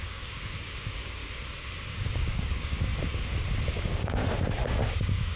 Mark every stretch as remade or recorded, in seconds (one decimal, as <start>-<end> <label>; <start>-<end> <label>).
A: 0.0-1.2 remade; 1.2-1.9 recorded; 1.9-2.9 remade; 2.9-3.7 recorded; 3.7-4.2 remade; 4.2-4.7 recorded; 4.7-5.4 remade